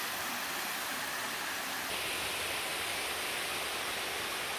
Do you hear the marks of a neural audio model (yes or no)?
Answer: no